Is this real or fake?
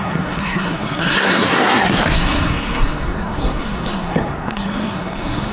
fake